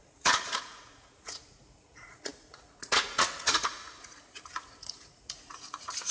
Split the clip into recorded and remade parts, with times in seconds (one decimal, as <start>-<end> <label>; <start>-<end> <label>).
0.0-6.1 remade